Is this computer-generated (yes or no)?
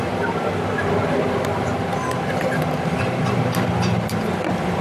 no